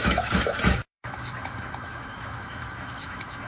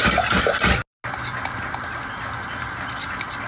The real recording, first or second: second